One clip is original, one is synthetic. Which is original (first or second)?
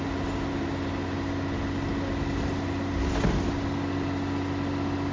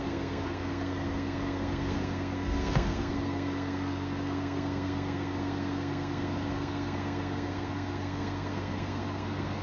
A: first